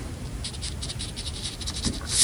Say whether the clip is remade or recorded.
recorded